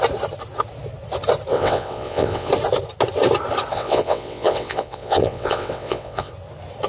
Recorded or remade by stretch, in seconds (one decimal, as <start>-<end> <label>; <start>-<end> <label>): 0.0-1.5 recorded; 1.5-2.5 remade; 2.5-3.7 recorded; 3.7-6.3 remade; 6.3-6.9 recorded

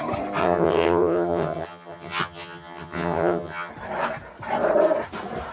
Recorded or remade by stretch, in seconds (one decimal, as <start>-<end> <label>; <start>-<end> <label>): 0.0-0.4 recorded; 0.4-3.7 remade; 3.7-5.5 recorded

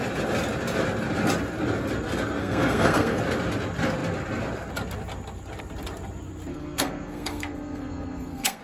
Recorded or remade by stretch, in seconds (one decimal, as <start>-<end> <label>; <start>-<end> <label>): 0.0-2.4 recorded; 2.4-3.2 remade; 3.2-6.5 recorded; 6.5-8.6 remade

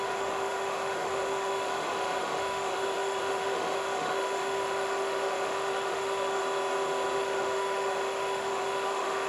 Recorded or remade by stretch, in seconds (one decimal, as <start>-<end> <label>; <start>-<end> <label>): 0.0-6.4 remade; 6.4-7.2 recorded; 7.2-9.3 remade